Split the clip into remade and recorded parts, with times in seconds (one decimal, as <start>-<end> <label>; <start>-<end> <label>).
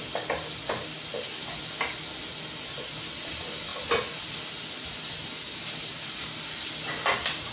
0.0-7.5 recorded